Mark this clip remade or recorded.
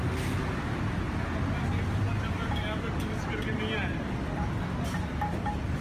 recorded